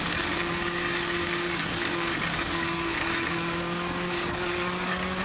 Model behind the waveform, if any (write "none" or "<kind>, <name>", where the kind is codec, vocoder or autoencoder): codec, DAC